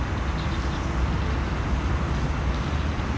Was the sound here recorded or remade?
recorded